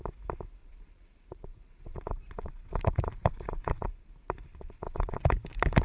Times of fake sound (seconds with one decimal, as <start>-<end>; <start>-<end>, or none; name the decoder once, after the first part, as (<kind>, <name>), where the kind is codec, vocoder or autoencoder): 0.6-4.1 (vocoder, Vocos); 4.5-5.2